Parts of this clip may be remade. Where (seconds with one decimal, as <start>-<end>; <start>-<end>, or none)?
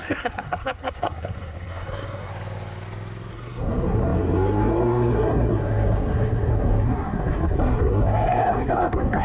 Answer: 0.0-2.3; 3.3-9.2